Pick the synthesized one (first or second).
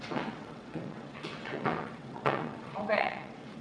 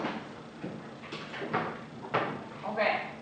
first